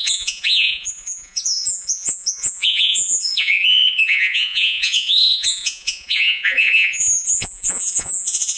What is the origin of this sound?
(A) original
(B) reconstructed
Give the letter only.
B